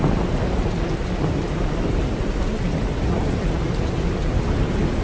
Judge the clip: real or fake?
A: real